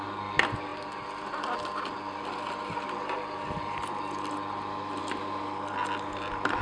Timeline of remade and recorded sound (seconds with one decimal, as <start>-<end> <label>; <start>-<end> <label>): 0.0-6.6 recorded